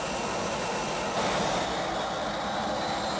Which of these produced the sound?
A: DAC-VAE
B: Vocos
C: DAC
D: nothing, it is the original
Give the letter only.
D